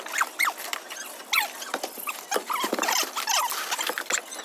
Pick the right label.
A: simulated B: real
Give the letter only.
B